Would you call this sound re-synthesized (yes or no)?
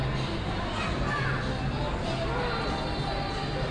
no